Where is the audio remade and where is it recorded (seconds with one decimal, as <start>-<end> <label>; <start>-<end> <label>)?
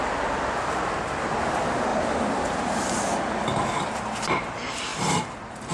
0.0-1.9 recorded; 1.9-4.4 remade; 4.4-4.9 recorded; 4.9-5.7 remade